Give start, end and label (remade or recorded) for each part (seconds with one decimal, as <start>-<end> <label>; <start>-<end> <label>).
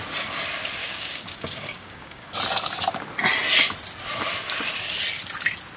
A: 0.0-0.8 recorded; 0.8-2.3 remade; 2.3-5.8 recorded